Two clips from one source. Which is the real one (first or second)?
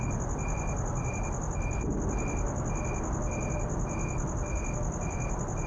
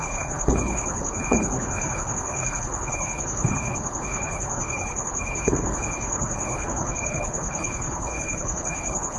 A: first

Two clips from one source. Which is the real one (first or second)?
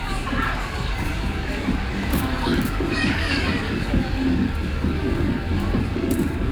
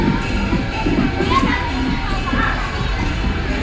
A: second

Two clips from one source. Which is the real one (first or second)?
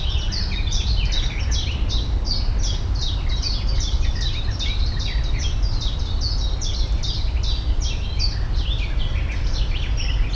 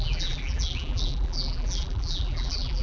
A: first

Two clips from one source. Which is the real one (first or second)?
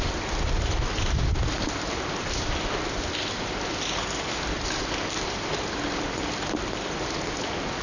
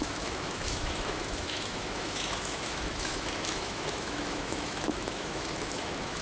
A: first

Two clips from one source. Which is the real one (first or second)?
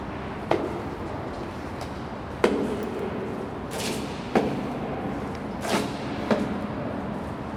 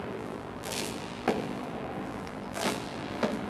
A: first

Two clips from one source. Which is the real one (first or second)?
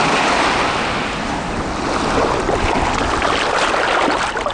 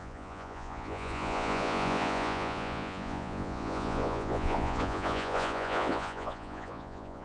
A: first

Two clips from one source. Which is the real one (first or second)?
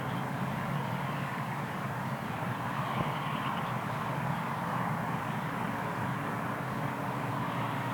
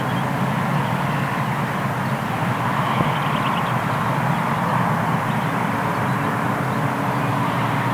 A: second